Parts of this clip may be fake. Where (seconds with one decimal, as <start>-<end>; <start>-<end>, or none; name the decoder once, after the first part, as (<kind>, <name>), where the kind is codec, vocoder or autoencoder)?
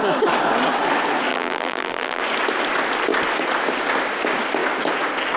1.3-2.2 (vocoder, BigVGAN v2)